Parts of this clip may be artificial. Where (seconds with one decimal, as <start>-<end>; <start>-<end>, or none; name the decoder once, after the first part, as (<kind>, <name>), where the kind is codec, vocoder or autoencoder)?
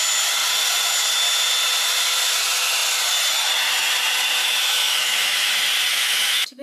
4.4-5.5 (autoencoder, DAC-VAE); 5.9-6.6